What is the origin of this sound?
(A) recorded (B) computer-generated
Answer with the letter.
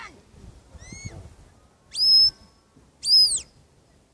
A